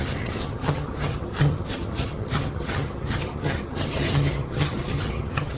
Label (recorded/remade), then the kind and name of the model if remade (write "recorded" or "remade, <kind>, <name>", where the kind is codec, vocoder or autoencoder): remade, vocoder, HiFi-GAN